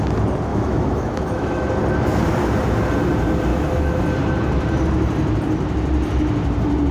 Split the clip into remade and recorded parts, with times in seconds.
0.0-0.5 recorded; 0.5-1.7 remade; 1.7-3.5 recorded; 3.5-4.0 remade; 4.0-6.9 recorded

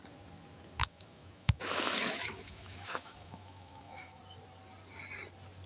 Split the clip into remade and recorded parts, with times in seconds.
0.0-0.8 recorded; 0.8-4.2 remade; 4.2-5.7 recorded

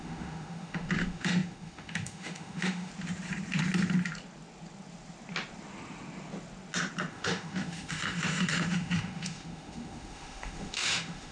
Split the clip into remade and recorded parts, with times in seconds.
0.0-2.9 remade; 2.9-7.1 recorded; 7.1-11.3 remade

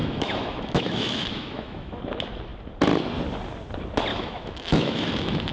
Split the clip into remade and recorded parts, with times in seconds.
0.0-2.0 remade; 2.0-4.1 recorded; 4.1-5.5 remade